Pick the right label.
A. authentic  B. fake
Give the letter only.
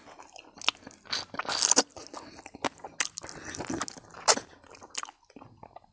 A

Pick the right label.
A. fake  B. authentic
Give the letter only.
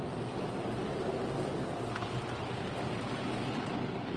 B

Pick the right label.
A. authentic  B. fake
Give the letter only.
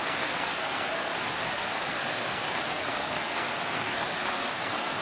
B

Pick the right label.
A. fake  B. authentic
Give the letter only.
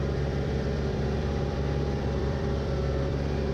A